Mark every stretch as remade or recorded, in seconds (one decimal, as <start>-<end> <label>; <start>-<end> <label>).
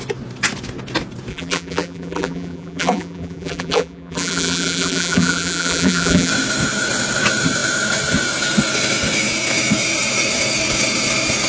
0.0-1.3 recorded; 1.3-6.3 remade; 6.3-11.5 recorded